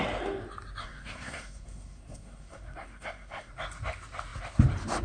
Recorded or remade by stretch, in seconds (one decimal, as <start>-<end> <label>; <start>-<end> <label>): 0.0-0.8 recorded; 0.8-3.5 remade; 3.5-5.0 recorded